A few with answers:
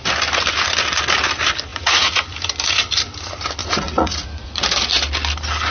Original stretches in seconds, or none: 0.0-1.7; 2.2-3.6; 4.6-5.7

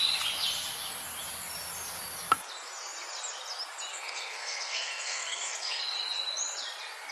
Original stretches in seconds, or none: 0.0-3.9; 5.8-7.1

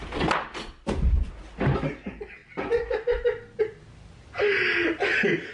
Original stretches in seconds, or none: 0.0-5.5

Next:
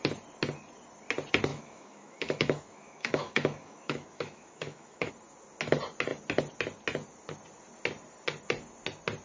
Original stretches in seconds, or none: 0.0-1.5; 5.1-9.2

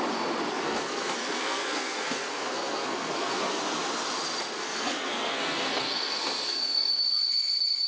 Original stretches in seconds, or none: 0.0-0.5; 3.6-4.6; 6.9-7.9

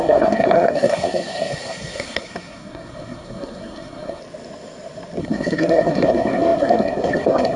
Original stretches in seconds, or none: 4.2-5.2

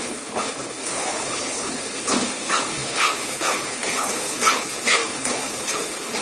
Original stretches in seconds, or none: none

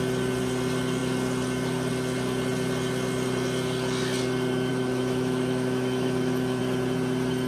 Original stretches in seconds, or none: 0.0-4.7; 6.6-7.5